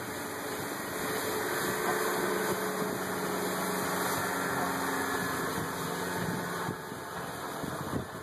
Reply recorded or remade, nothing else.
recorded